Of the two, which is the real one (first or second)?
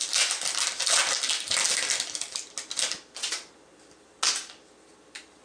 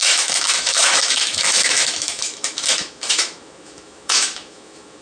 first